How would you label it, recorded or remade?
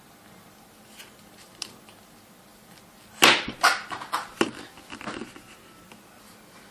recorded